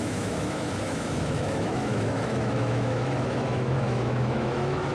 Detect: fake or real fake